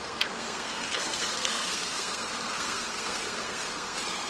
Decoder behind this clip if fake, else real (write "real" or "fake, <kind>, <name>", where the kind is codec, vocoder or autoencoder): fake, codec, SNAC